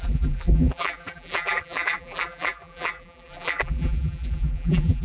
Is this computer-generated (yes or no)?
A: yes